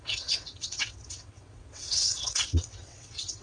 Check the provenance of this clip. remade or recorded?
remade